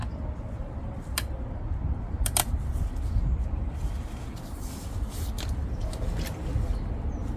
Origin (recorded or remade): recorded